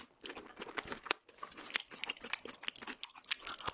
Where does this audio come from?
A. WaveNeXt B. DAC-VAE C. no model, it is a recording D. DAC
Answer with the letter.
C